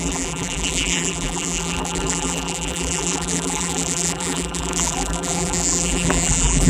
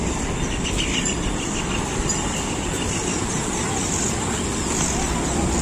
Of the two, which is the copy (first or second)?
first